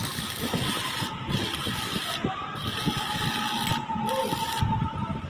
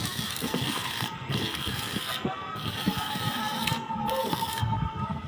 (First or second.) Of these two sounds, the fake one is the second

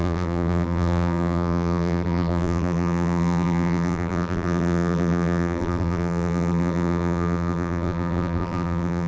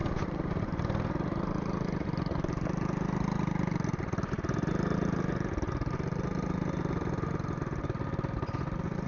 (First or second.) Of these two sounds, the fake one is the first